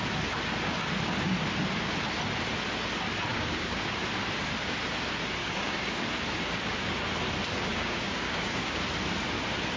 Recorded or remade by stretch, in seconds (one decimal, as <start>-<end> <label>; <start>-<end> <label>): 0.0-3.3 recorded; 3.3-4.0 remade; 4.0-5.4 recorded; 5.4-6.1 remade; 6.1-7.7 recorded; 7.7-8.8 remade; 8.8-9.8 recorded